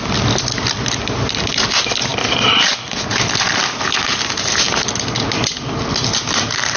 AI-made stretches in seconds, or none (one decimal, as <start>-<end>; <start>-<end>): none

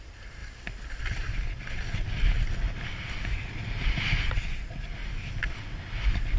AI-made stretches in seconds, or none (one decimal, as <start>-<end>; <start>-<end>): none

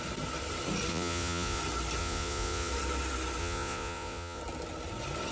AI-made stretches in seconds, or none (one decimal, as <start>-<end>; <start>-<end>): 0.9-1.6; 2.0-2.7; 3.4-4.4